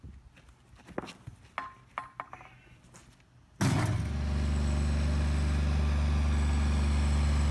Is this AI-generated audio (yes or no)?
no